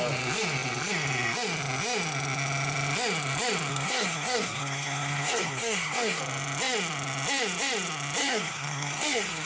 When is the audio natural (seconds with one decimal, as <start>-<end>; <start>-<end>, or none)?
0.0-3.7; 6.2-8.2